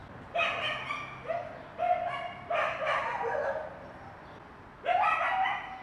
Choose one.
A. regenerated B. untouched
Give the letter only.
B